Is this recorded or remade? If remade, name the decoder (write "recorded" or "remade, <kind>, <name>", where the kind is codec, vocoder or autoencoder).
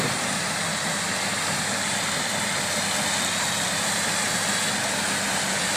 remade, vocoder, BigVGAN v2